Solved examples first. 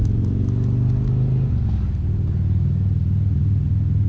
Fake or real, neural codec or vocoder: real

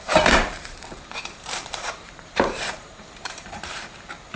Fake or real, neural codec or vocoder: fake, vocoder, BigVGAN v2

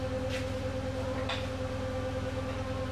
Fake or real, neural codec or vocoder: real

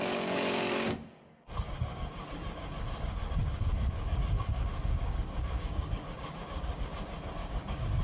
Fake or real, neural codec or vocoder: fake, codec, DAC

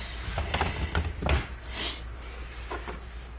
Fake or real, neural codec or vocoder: real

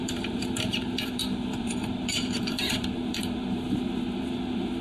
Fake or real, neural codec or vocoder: fake, vocoder, BigVGAN v2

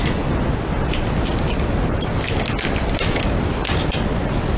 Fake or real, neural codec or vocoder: real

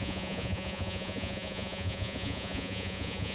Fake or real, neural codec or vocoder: fake, vocoder, Vocos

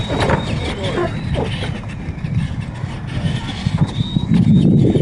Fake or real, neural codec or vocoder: real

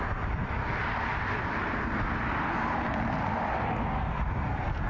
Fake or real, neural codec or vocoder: real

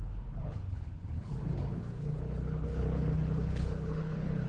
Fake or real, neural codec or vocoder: fake, codec, HILCodec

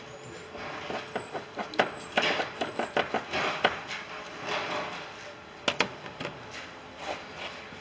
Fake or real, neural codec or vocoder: real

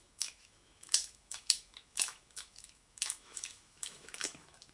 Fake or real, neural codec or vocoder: fake, autoencoder, DAC-VAE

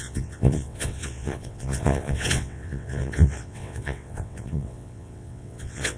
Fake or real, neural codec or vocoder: fake, vocoder, WaveNeXt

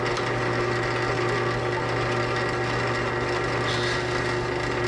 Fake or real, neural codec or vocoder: real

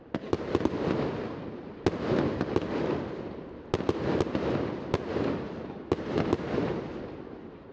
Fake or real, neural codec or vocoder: real